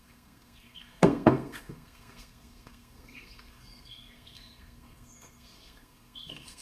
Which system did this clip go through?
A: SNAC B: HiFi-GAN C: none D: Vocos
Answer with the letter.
A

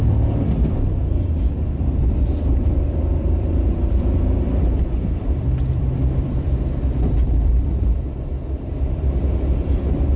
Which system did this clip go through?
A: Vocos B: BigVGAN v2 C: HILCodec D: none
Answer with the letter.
B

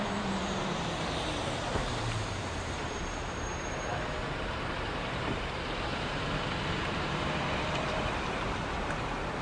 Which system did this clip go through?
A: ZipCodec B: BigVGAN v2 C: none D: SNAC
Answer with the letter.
B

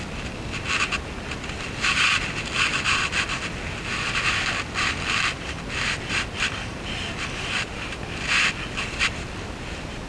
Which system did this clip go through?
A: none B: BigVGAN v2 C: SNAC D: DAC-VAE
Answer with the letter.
A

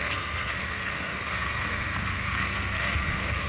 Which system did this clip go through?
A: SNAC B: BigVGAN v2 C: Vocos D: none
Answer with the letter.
A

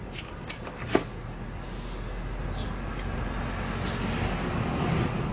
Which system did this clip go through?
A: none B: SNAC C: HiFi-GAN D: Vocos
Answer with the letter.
A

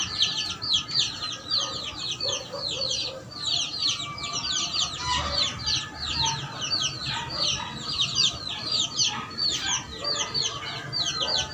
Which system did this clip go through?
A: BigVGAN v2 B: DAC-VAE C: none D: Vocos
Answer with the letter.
C